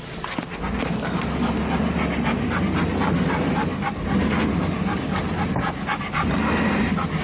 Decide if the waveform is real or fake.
real